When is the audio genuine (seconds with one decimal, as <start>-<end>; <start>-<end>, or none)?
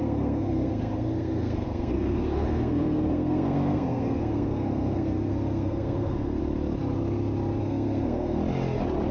6.4-7.6; 8.4-9.1